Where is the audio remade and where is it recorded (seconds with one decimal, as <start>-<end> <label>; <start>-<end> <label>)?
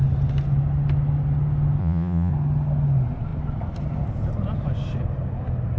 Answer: 0.0-1.8 recorded; 1.8-2.3 remade; 2.3-5.8 recorded